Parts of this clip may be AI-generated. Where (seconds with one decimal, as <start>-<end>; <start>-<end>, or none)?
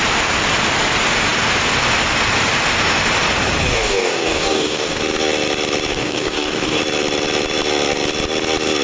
3.7-5.0; 5.9-6.8